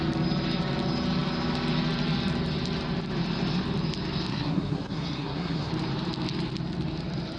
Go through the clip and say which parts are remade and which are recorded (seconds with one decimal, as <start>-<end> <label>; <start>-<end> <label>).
0.0-4.3 recorded; 4.3-5.7 remade; 5.7-7.4 recorded